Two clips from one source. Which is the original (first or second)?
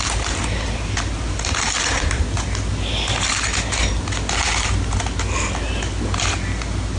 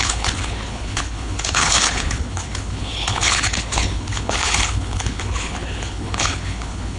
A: first